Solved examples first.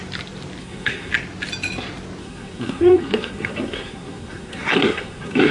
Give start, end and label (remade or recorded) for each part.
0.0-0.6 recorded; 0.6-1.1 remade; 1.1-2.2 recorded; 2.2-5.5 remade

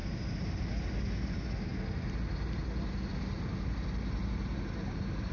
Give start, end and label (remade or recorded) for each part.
0.0-5.3 recorded

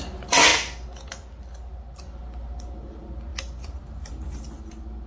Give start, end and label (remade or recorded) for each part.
0.0-5.1 recorded

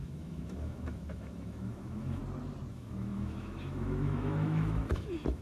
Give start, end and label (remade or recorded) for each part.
0.0-2.2 remade; 2.2-2.7 recorded; 2.7-5.4 remade